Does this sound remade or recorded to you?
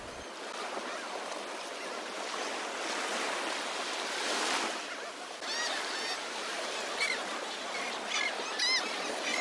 recorded